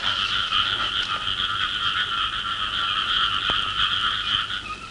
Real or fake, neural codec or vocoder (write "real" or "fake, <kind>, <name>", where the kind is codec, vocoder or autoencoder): real